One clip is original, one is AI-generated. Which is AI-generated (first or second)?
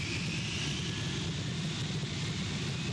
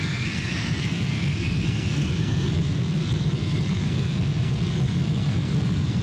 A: second